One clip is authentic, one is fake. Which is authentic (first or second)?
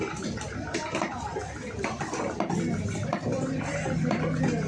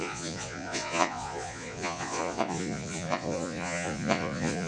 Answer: first